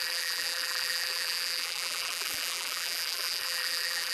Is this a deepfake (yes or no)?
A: yes